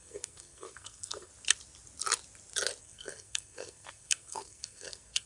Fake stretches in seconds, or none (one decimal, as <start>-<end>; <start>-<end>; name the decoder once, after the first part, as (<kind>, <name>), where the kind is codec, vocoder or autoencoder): 0.0-1.3 (codec, SNAC); 2.8-5.3